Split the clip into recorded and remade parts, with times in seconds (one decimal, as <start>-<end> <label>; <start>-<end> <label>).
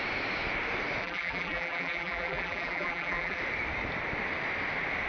0.0-1.0 recorded; 1.0-3.4 remade; 3.4-5.1 recorded